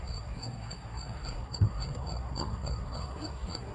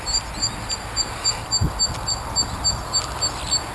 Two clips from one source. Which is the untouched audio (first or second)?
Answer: second